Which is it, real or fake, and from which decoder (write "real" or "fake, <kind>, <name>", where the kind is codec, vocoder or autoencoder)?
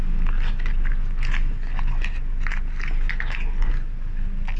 real